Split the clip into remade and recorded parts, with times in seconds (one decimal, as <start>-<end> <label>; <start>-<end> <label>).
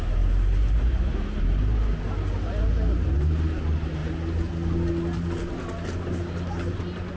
0.0-7.2 recorded